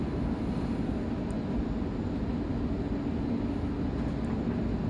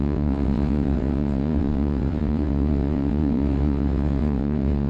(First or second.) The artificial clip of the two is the second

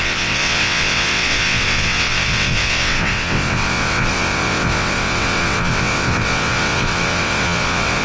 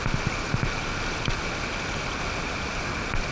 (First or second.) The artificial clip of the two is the first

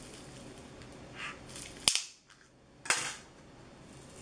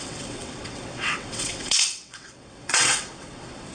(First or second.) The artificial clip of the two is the second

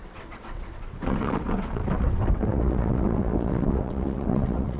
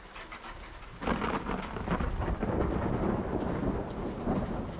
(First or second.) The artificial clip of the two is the first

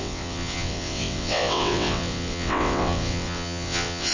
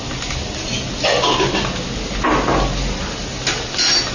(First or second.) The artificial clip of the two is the first